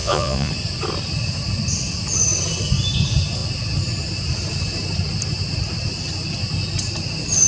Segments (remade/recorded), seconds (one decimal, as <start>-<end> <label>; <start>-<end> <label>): 0.0-0.5 remade; 0.5-7.5 recorded